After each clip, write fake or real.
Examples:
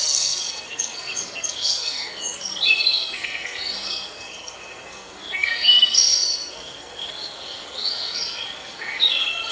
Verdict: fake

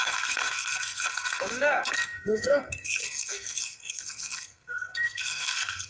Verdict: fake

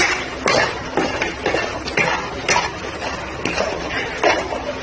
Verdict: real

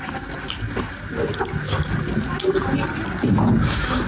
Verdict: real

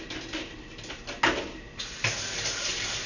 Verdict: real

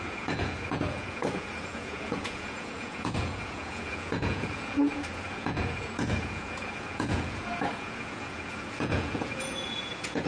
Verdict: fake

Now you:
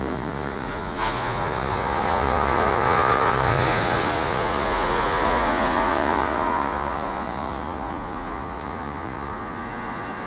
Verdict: fake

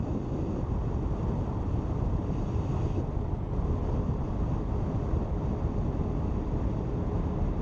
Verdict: real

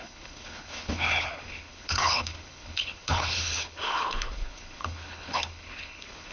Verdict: fake